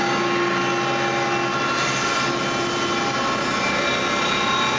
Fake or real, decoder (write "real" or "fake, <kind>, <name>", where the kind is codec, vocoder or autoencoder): real